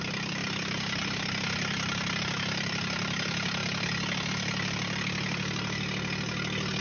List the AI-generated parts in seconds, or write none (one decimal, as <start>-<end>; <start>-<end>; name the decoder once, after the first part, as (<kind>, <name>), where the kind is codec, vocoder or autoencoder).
none